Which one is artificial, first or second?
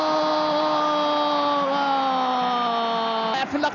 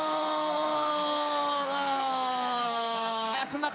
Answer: second